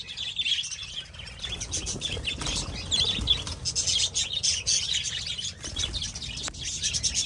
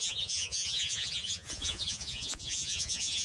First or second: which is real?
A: first